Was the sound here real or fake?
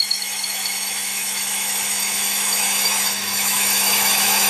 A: fake